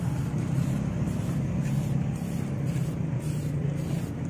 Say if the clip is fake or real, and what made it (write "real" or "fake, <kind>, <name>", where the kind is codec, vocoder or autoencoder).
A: real